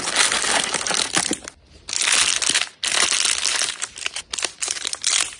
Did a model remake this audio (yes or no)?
no